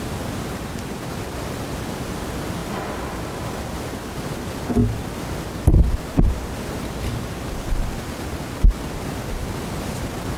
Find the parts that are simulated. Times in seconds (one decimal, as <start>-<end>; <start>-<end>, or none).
0.0-2.6; 3.9-4.8; 7.0-10.4